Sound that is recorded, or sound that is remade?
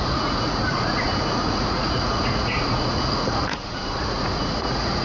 remade